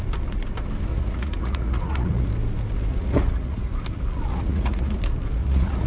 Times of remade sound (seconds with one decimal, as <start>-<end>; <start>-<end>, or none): 0.9-2.3; 2.9-3.7; 4.3-5.0; 5.4-5.9